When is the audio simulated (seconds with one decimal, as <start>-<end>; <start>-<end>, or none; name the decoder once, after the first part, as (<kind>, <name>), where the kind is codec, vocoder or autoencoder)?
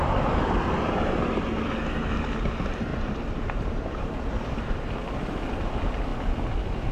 2.9-5.0 (vocoder, BigVGAN v2)